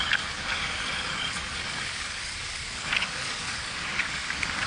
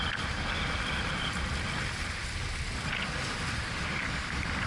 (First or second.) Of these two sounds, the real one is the second